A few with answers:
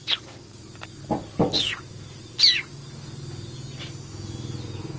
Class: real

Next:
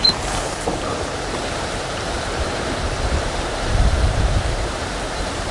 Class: fake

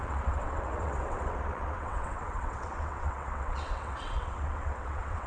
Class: fake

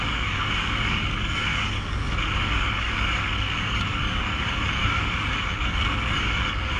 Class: fake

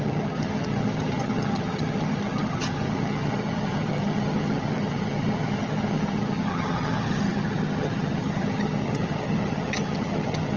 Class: fake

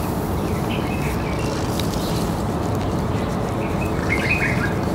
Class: real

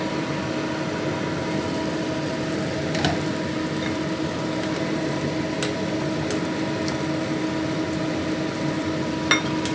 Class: real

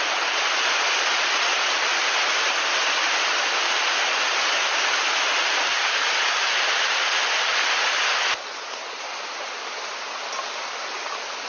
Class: real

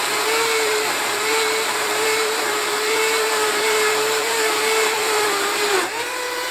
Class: fake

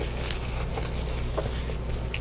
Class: real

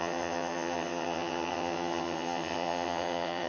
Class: fake